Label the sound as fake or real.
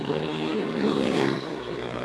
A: fake